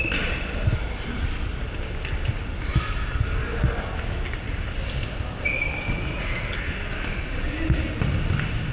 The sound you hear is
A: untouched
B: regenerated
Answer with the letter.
A